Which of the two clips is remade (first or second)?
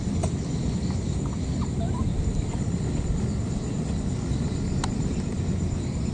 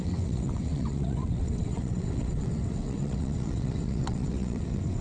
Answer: second